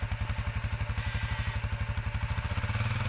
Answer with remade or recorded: recorded